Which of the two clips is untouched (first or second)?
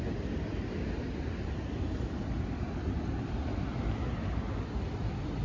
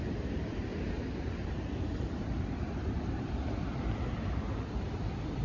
first